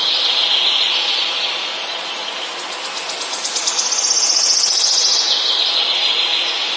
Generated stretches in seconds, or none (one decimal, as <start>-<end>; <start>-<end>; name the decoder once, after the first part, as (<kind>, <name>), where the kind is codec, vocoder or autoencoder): 1.7-2.3 (vocoder, Vocos)